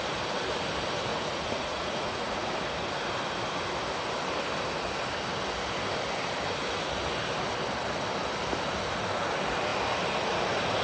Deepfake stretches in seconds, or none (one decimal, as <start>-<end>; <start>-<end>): 1.1-2.5